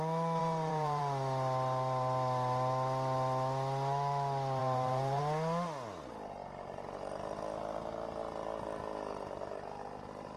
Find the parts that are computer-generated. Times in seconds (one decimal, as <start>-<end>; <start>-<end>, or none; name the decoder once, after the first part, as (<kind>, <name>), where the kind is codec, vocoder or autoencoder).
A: 0.4-1.0 (vocoder, BigVGAN v2); 4.6-5.2